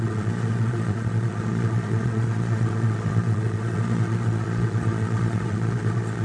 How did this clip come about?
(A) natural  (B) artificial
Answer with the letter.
B